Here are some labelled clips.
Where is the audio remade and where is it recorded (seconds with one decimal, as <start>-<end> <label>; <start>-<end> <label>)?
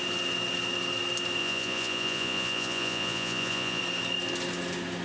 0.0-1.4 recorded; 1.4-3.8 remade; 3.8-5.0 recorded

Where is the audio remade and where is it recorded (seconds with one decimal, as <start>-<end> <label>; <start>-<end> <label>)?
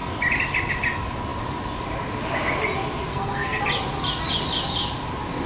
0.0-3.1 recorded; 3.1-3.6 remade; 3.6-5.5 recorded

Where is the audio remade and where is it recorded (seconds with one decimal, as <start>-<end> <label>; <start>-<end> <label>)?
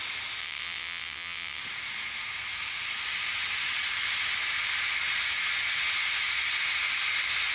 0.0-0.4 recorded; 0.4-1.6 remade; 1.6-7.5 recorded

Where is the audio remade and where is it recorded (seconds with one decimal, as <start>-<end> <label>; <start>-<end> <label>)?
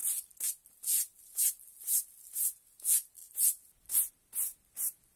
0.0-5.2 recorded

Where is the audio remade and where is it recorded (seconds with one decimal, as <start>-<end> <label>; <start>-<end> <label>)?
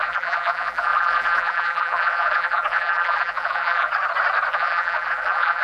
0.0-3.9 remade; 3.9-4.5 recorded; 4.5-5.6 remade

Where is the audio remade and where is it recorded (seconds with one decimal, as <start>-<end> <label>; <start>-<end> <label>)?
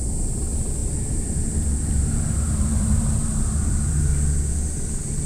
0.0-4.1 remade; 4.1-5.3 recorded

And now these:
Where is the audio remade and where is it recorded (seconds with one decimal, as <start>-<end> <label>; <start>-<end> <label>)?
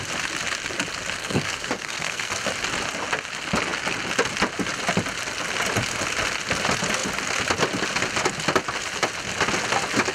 0.0-1.2 recorded; 1.2-2.5 remade; 2.5-10.1 recorded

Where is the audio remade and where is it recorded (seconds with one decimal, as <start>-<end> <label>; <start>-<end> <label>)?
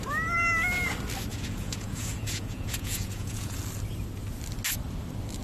0.0-1.3 recorded; 1.3-3.6 remade; 3.6-5.4 recorded